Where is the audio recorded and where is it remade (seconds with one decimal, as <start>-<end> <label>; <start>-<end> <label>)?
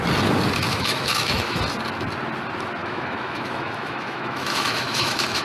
0.0-0.7 recorded; 0.7-1.6 remade; 1.6-2.8 recorded; 2.8-5.4 remade